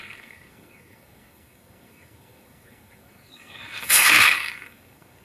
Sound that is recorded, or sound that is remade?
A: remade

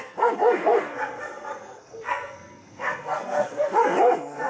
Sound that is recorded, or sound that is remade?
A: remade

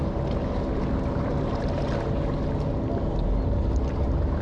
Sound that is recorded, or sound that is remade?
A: recorded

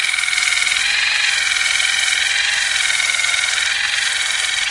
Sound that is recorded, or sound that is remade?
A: recorded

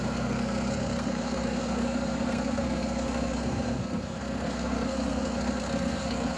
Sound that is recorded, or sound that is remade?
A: remade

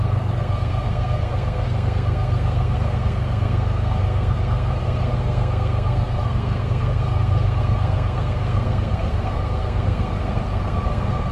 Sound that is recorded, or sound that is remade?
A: remade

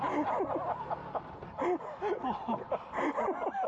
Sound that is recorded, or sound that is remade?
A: recorded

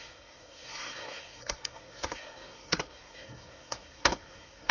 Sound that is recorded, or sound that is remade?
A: remade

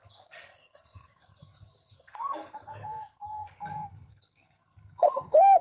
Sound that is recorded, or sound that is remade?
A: remade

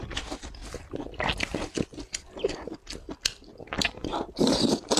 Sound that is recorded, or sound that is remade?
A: recorded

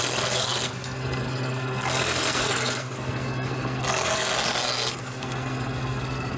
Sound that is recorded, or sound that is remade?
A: remade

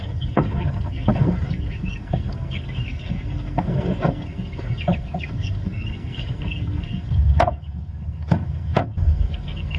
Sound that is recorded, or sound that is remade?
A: remade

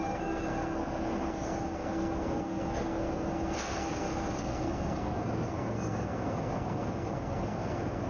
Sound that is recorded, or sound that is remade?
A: remade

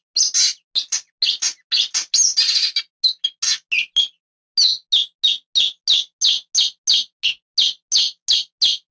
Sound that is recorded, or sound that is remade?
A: recorded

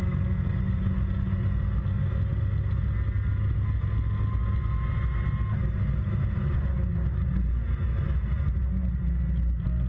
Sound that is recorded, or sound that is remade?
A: recorded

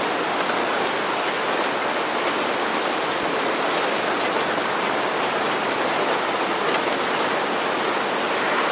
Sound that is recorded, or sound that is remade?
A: recorded